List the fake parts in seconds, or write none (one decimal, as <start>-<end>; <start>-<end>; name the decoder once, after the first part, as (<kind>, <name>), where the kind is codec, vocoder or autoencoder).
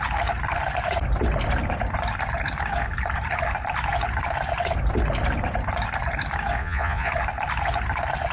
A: 6.6-7.1 (vocoder, Vocos)